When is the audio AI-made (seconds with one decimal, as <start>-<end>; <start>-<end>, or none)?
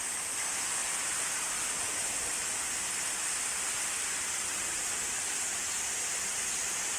0.0-0.8; 4.0-7.0